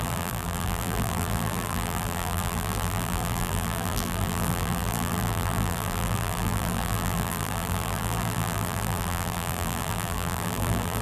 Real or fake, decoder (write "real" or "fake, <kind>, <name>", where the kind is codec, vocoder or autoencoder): fake, vocoder, BigVGAN v2